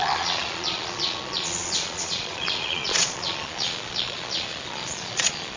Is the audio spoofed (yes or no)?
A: yes